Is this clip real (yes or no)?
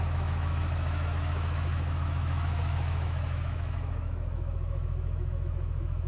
no